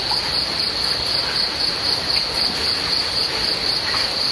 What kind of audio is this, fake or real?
real